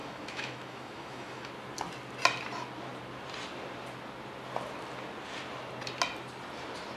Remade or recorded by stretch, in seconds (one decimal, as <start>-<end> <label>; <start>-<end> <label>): 0.0-1.5 remade; 1.5-7.0 recorded

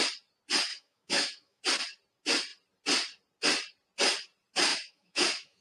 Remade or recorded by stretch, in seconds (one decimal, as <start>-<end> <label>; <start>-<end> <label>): 0.0-0.7 recorded; 0.7-1.6 remade; 1.6-4.7 recorded; 4.7-5.6 remade

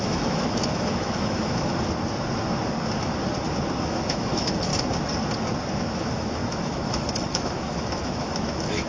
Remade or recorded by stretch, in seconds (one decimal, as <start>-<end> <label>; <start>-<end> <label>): 0.0-1.7 remade; 1.7-3.8 recorded; 3.8-4.7 remade; 4.7-5.8 recorded; 5.8-8.9 remade

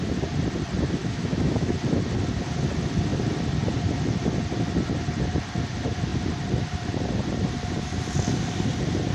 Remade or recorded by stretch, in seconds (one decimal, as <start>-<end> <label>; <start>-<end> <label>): 0.0-1.0 recorded; 1.0-1.7 remade; 1.7-9.1 recorded

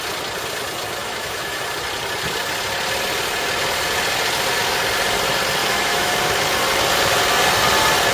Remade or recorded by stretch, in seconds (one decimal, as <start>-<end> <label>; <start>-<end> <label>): 0.0-1.0 recorded; 1.0-1.6 remade; 1.6-5.6 recorded; 5.6-6.1 remade; 6.1-8.1 recorded

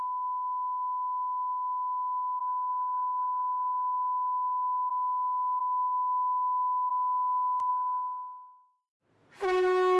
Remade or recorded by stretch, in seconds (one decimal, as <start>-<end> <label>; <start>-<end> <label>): 0.0-2.4 remade; 2.4-4.9 recorded; 4.9-7.7 remade; 7.7-10.0 recorded